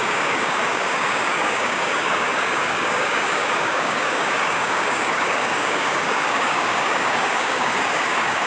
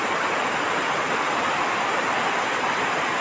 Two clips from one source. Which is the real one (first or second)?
second